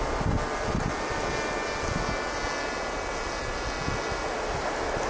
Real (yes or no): yes